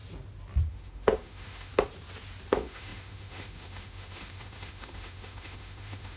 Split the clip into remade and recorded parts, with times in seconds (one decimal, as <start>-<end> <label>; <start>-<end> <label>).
0.0-0.7 recorded; 0.7-1.7 remade; 1.7-2.5 recorded; 2.5-6.2 remade